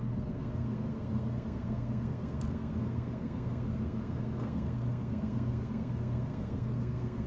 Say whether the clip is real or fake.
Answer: fake